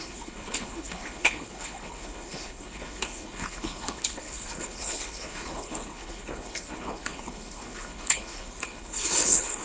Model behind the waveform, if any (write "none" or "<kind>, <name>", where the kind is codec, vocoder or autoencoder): codec, HILCodec